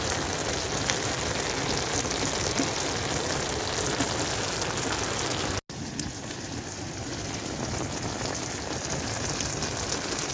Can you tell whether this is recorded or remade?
recorded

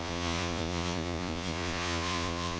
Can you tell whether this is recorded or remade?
remade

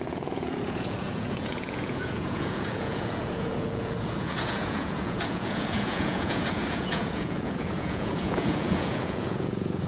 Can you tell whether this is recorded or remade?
remade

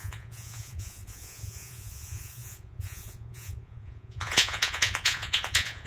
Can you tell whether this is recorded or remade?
remade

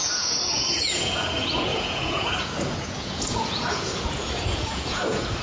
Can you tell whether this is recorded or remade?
remade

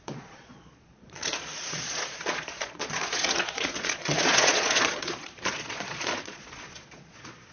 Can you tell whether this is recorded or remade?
remade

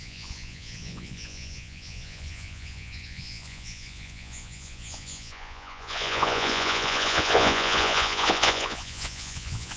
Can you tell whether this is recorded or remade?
remade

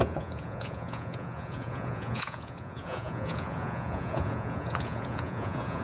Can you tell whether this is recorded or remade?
remade